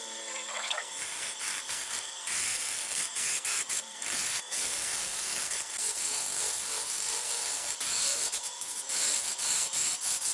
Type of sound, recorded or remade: remade